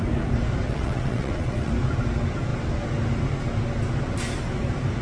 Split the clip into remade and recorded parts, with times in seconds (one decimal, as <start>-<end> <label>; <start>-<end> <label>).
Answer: 0.0-0.7 recorded; 0.7-1.7 remade; 1.7-5.0 recorded